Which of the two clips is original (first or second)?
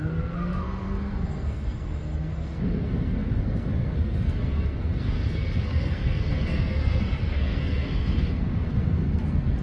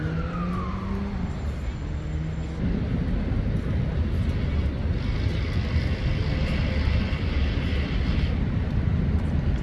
second